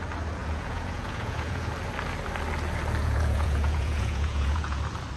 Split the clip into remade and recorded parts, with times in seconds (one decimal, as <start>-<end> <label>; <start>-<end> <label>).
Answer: 0.0-0.4 recorded; 0.4-1.7 remade; 1.7-3.0 recorded; 3.0-4.8 remade; 4.8-5.2 recorded